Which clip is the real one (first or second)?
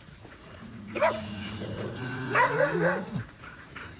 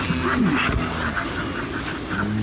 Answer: second